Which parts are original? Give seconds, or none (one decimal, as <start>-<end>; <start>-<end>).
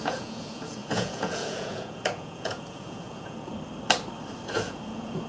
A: 3.5-4.5